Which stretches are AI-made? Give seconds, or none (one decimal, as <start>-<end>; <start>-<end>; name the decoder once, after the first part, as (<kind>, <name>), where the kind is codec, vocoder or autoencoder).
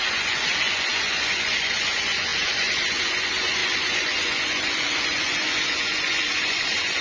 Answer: 0.0-7.0 (vocoder, Vocos)